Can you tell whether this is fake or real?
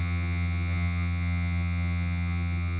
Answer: fake